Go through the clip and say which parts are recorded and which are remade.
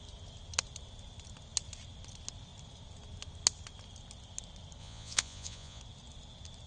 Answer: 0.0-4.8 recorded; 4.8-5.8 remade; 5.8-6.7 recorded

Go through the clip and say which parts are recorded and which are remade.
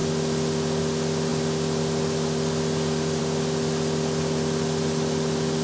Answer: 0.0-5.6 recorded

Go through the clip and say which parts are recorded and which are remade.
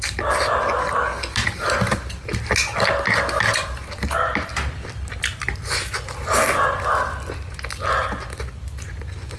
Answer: 0.0-9.4 recorded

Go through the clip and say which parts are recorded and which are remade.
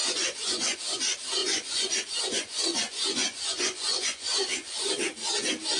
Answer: 0.0-0.8 remade; 0.8-1.4 recorded; 1.4-4.9 remade; 4.9-5.8 recorded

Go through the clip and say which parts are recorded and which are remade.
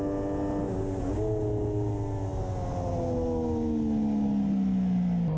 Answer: 0.0-5.4 recorded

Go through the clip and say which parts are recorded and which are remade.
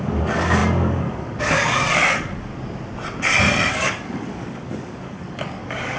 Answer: 0.0-2.5 remade; 2.5-3.7 recorded; 3.7-6.0 remade